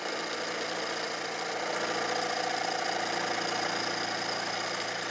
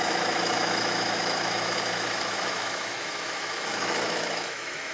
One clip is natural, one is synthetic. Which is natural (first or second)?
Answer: first